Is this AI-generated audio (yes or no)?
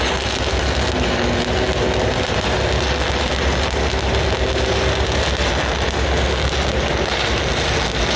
no